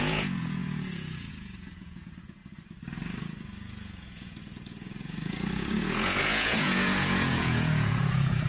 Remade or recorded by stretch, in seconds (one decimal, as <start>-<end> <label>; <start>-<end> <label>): 0.0-2.4 remade; 2.4-3.2 recorded; 3.2-8.5 remade